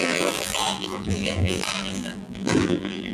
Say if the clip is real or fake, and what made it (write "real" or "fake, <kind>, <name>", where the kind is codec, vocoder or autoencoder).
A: fake, vocoder, BigVGAN v2